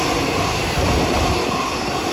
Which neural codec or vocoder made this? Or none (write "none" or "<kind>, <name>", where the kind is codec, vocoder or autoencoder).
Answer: none